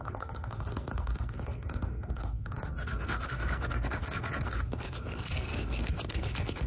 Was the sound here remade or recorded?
remade